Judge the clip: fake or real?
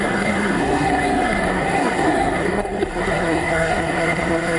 fake